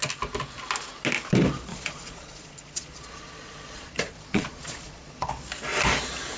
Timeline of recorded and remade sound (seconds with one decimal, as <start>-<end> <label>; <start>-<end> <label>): 0.0-1.7 recorded; 1.7-5.3 remade; 5.3-6.4 recorded